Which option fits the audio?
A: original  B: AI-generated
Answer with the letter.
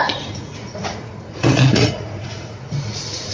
B